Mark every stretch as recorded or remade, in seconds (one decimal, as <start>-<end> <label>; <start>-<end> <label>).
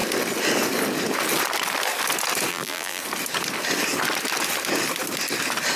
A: 0.0-2.5 recorded; 2.5-3.0 remade; 3.0-5.8 recorded